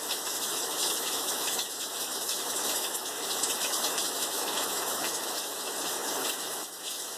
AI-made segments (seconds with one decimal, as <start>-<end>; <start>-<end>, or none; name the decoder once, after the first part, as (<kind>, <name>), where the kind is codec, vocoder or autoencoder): 0.0-7.2 (autoencoder, DAC-VAE)